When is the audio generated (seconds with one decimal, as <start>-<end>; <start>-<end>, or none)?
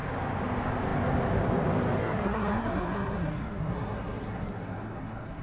2.0-5.4